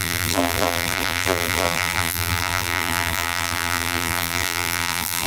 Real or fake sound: fake